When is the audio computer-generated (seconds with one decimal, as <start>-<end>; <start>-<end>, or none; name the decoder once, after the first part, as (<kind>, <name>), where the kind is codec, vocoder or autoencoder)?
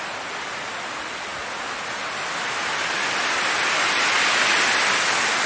none